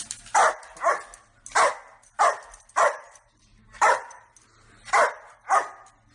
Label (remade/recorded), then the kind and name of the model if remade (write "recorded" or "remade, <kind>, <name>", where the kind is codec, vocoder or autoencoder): recorded